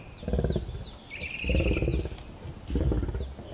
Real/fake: real